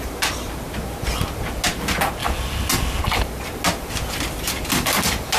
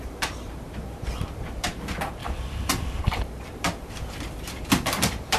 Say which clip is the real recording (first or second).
first